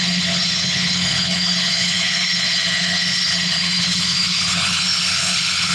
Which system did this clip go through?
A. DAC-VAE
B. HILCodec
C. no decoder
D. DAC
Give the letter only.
B